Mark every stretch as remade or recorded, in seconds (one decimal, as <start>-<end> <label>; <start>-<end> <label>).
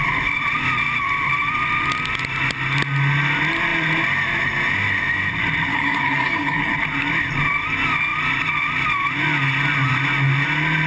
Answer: 0.0-5.7 recorded; 5.7-6.7 remade; 6.7-10.9 recorded